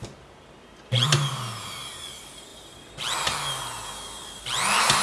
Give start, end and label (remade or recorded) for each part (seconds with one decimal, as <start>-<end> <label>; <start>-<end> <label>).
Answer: 0.0-5.0 recorded